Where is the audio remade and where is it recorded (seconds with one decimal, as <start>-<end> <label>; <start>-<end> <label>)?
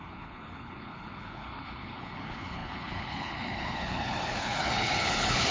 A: 0.0-5.5 remade